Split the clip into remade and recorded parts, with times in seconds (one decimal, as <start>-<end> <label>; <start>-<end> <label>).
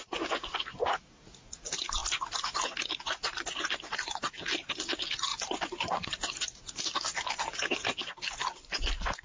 0.0-5.3 recorded; 5.3-6.4 remade; 6.4-9.2 recorded